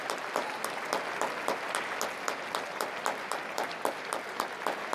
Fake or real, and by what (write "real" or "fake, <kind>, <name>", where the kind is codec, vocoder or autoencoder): real